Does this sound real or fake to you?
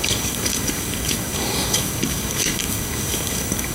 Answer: fake